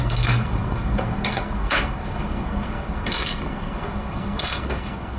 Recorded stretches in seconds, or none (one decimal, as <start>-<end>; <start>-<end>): none